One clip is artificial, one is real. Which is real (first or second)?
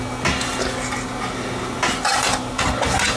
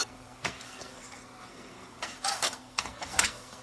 first